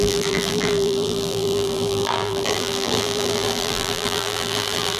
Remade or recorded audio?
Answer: remade